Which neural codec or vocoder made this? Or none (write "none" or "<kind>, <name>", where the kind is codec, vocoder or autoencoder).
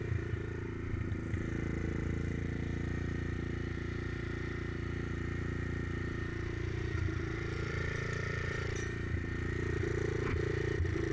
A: vocoder, BigVGAN v2